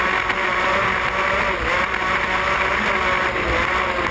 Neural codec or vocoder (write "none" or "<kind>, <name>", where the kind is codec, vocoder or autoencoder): none